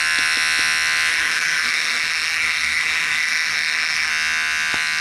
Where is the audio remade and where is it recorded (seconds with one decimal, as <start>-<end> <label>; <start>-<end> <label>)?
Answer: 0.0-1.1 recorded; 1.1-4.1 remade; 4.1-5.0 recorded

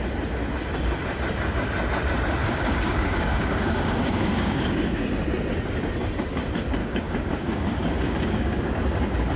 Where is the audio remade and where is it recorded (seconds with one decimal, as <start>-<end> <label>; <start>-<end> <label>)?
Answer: 0.0-2.4 recorded; 2.4-5.1 remade; 5.1-6.8 recorded; 6.8-8.7 remade; 8.7-9.4 recorded

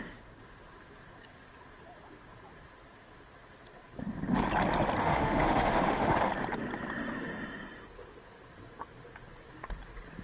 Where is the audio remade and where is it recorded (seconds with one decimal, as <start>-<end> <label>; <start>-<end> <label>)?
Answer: 0.0-5.0 recorded; 5.0-6.3 remade; 6.3-10.2 recorded